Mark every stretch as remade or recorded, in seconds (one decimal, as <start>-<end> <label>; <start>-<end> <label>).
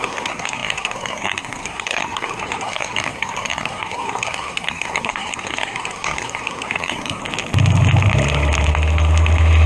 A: 0.0-7.2 remade; 7.2-9.7 recorded